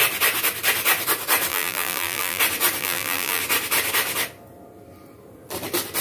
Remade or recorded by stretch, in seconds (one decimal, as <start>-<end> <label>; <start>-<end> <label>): 0.0-1.5 recorded; 1.5-2.4 remade; 2.4-2.8 recorded; 2.8-3.4 remade; 3.4-6.0 recorded